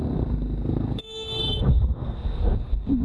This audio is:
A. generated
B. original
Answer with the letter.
A